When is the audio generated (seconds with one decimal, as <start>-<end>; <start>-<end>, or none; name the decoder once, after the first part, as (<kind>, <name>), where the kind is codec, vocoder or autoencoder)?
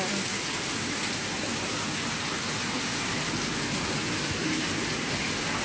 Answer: none